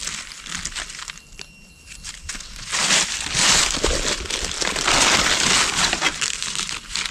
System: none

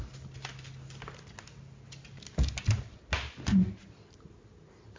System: none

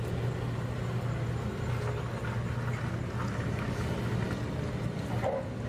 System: none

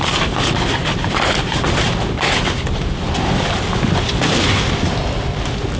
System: none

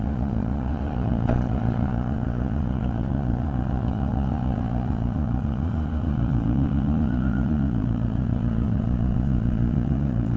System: vocoder, Vocos